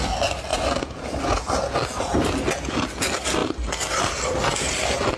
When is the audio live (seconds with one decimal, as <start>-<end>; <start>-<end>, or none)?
0.0-5.2